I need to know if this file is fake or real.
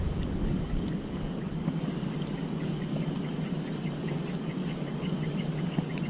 fake